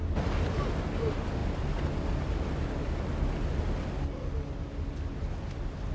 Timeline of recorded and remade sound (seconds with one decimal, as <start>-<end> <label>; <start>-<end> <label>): 0.0-5.9 recorded